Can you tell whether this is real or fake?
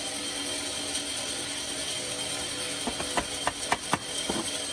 real